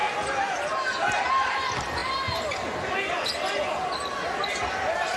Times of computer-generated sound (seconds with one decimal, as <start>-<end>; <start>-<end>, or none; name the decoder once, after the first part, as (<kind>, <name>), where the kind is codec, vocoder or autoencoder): none